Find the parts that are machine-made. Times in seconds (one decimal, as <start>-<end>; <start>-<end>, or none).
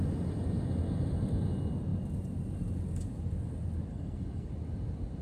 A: 3.9-4.5